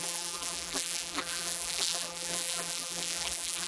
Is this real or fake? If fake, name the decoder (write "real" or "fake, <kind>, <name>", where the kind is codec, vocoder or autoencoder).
fake, vocoder, BigVGAN v2